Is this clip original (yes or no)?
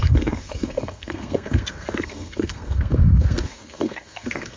no